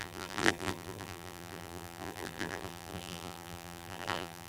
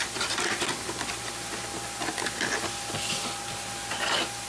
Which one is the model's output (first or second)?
first